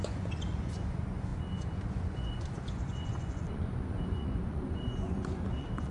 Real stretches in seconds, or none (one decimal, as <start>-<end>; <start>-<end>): none